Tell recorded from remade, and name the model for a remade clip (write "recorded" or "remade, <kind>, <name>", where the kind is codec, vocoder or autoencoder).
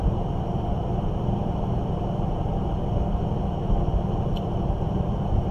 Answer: remade, vocoder, BigVGAN v2